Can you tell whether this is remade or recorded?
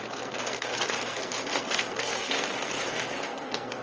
remade